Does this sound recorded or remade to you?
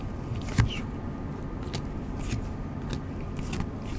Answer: recorded